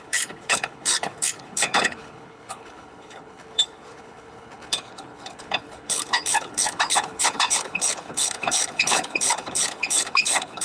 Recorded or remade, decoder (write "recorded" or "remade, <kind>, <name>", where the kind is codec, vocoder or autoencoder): remade, codec, HILCodec